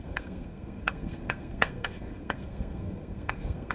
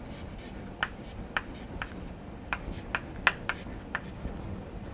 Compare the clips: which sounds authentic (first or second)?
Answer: second